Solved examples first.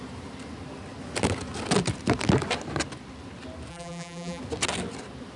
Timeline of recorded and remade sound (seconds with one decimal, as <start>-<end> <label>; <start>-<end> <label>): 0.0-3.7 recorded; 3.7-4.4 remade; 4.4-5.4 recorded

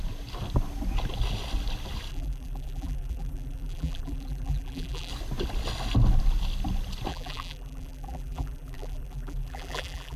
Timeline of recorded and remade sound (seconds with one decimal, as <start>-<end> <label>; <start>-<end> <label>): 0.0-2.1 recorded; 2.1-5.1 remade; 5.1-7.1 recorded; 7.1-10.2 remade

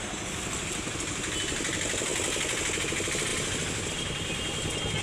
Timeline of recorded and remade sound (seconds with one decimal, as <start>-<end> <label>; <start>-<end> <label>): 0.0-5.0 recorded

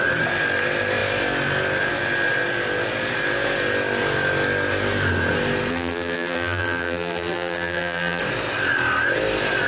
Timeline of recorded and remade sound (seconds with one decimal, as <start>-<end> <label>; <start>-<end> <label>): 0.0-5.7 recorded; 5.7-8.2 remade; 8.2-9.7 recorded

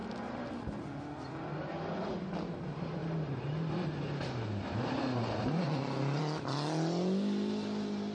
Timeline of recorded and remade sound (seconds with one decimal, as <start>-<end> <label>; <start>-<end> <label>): 0.0-3.0 recorded; 3.0-6.2 remade; 6.2-8.1 recorded